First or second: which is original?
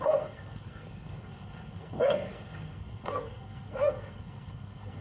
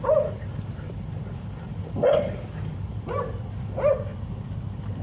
second